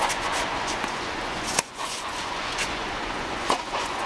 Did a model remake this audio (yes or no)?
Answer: yes